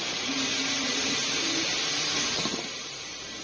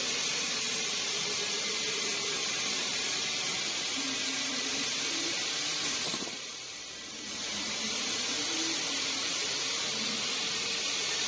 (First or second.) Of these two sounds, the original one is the first